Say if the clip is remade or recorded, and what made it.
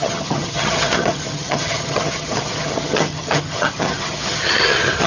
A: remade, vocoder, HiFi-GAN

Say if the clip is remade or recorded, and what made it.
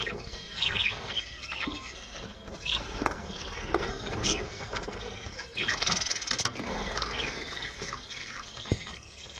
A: remade, codec, SNAC